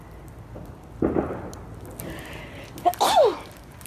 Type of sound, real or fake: real